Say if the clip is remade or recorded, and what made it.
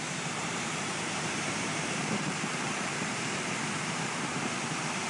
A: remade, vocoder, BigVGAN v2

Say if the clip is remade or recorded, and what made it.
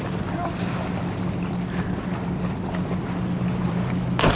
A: recorded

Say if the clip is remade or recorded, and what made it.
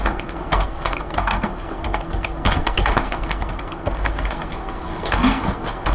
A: remade, codec, SNAC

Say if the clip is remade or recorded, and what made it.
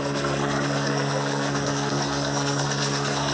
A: remade, codec, SNAC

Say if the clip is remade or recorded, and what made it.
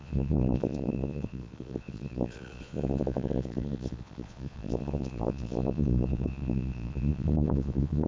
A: remade, vocoder, Vocos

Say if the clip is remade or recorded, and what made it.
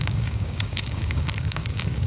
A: remade, codec, DAC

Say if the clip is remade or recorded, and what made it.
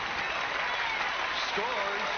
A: recorded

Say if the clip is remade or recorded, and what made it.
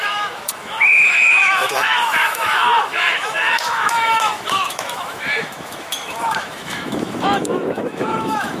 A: remade, autoencoder, DAC-VAE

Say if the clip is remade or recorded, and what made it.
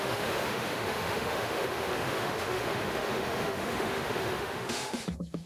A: remade, autoencoder, DAC-VAE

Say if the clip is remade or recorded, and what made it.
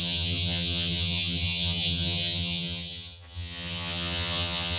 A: remade, vocoder, HiFi-GAN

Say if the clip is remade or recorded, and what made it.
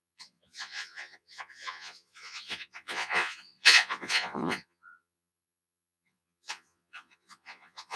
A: remade, vocoder, Vocos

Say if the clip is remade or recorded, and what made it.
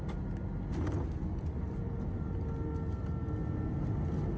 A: recorded